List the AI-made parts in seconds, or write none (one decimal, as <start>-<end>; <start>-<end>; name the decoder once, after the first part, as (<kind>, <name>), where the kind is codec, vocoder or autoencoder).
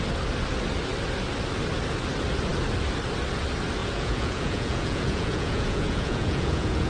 3.8-6.9 (vocoder, Vocos)